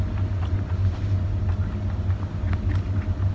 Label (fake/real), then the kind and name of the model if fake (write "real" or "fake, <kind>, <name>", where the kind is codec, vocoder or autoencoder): real